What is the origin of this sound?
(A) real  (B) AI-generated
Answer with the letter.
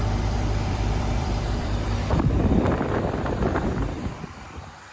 B